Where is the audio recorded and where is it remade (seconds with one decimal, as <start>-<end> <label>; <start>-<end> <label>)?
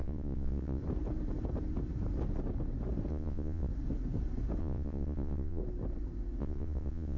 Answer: 0.0-0.8 remade; 0.8-3.1 recorded; 3.1-3.7 remade; 3.7-4.6 recorded; 4.6-5.6 remade; 5.6-6.4 recorded; 6.4-7.2 remade